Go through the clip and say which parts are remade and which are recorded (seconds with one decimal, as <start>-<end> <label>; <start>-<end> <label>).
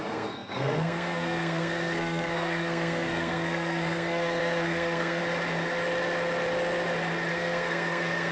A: 0.0-5.2 remade; 5.2-7.3 recorded; 7.3-8.3 remade